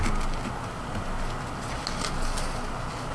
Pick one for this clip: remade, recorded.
recorded